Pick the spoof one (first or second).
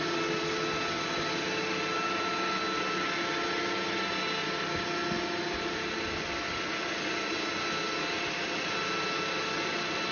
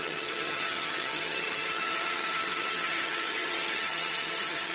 second